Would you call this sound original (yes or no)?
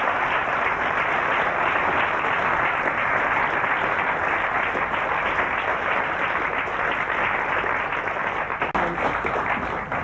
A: yes